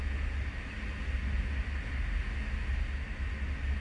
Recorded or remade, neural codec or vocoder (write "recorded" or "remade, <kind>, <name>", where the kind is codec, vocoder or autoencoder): recorded